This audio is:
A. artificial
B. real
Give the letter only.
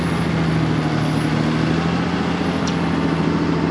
B